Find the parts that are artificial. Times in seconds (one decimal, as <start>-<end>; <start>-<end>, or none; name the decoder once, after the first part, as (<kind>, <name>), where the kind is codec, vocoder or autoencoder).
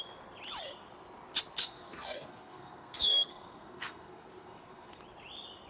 1.6-5.0 (codec, SNAC)